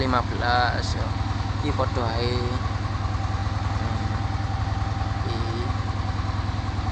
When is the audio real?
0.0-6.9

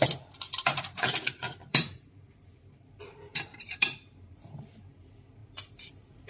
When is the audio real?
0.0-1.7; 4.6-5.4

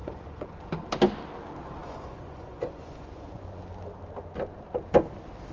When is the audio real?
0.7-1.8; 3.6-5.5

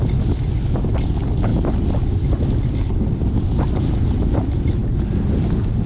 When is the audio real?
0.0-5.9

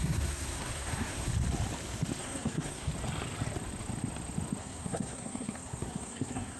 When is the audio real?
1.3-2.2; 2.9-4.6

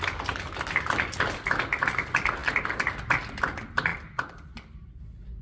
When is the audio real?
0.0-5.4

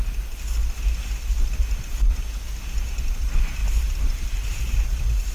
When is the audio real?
0.0-3.6; 4.6-5.3